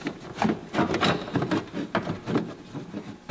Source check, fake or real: real